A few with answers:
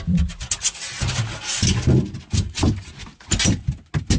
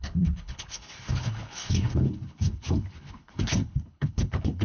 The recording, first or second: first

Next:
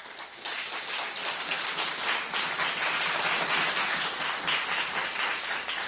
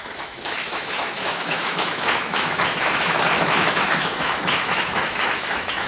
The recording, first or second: first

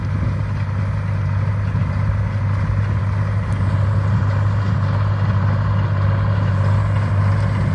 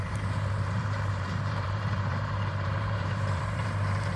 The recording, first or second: first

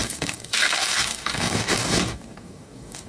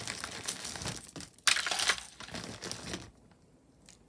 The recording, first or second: second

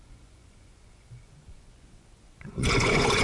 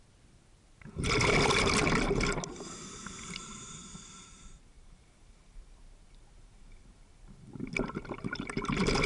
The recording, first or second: second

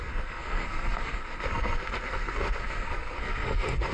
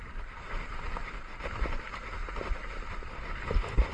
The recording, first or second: second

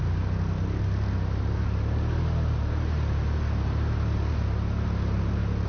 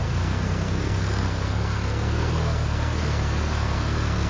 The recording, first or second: first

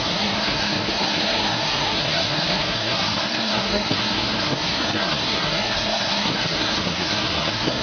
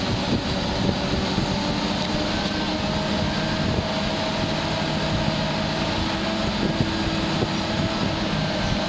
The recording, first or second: second